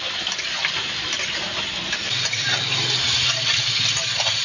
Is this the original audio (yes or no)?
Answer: yes